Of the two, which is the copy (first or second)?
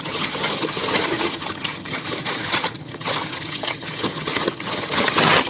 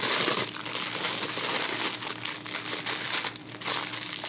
first